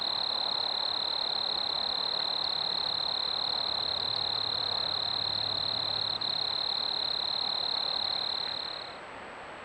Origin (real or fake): real